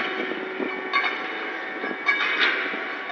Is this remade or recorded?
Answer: recorded